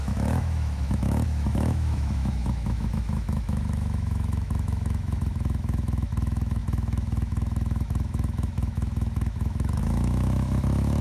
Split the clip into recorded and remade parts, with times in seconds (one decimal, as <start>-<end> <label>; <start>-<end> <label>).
0.0-11.0 remade